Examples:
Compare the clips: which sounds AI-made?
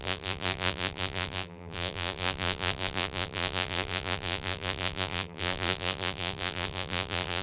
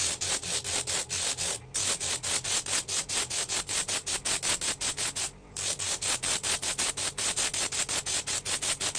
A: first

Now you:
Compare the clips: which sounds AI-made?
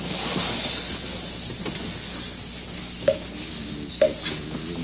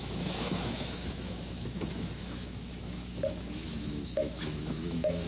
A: second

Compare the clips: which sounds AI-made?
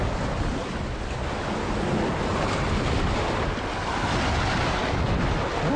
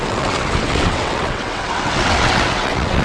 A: second